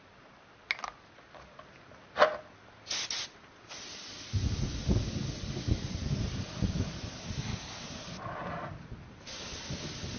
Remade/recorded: recorded